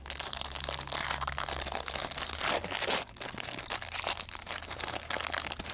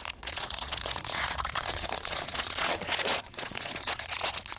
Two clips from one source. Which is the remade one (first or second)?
second